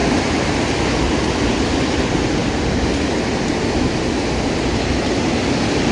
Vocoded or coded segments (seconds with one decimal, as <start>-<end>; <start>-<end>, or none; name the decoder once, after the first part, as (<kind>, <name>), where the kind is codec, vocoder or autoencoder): none